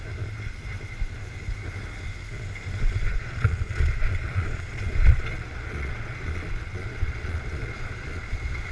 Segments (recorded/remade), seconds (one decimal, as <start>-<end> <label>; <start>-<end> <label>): 0.0-3.1 recorded; 3.1-8.7 remade